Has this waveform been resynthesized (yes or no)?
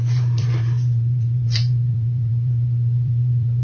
yes